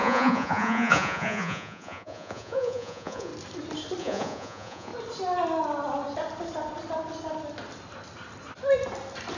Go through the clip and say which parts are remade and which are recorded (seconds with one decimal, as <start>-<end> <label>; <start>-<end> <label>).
0.0-3.3 remade; 3.3-4.0 recorded; 4.0-4.9 remade; 4.9-9.4 recorded